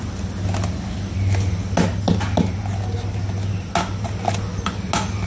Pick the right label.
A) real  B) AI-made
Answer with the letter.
A